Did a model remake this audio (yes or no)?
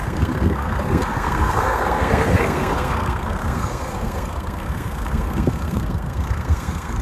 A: yes